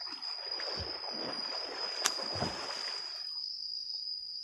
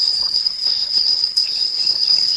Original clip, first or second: first